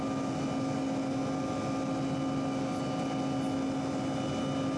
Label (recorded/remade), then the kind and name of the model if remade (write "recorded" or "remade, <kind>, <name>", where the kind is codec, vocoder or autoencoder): recorded